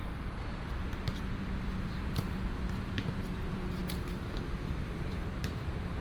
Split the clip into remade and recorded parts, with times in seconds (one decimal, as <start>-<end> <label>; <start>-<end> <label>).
0.0-3.8 remade; 3.8-4.4 recorded; 4.4-6.0 remade